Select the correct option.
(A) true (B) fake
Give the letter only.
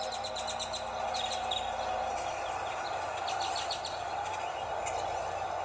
A